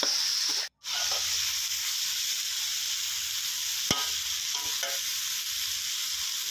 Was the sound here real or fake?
real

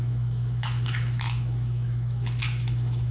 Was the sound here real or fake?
fake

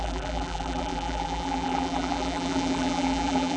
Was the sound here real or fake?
fake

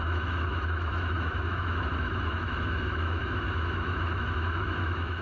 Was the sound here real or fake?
fake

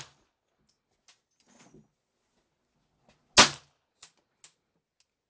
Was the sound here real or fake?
real